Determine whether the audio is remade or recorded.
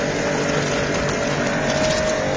recorded